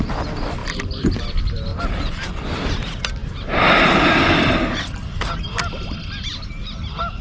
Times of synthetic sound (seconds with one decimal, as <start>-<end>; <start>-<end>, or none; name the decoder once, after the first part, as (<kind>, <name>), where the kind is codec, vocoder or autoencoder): 0.6-1.2 (vocoder, BigVGAN v2); 1.7-2.7